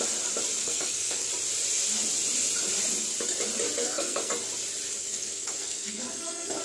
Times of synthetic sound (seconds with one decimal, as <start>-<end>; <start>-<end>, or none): 0.6-1.3; 3.8-4.3; 5.0-6.6